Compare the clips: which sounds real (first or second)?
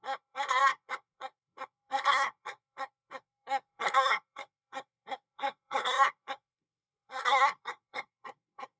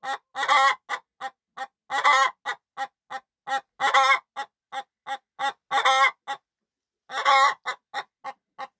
second